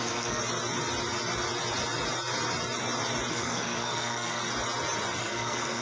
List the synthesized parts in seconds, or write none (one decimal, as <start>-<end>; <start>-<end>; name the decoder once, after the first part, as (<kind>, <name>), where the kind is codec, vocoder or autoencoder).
0.0-0.4 (codec, SNAC); 3.3-4.4; 5.2-5.8